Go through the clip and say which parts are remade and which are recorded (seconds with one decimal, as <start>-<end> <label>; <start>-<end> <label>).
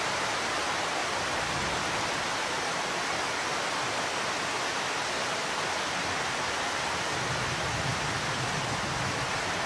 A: 0.0-9.7 recorded